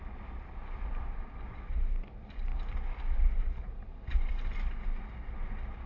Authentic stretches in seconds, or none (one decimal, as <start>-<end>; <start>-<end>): 0.0-5.9